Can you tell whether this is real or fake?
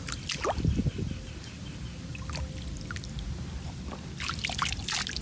real